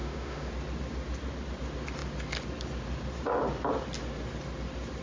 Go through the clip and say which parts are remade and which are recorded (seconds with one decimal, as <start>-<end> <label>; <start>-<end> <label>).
0.0-0.5 remade; 0.5-5.0 recorded